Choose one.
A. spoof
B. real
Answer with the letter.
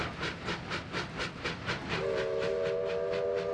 B